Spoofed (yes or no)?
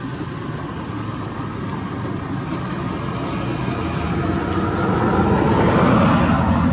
no